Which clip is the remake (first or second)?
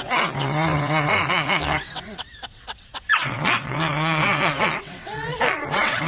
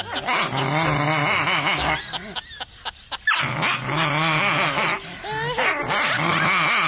first